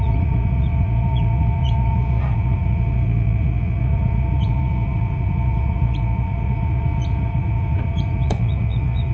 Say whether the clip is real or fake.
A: fake